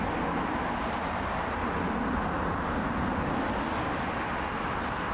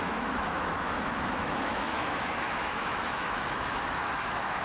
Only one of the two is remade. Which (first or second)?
second